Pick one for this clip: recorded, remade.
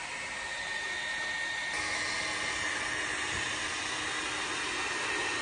recorded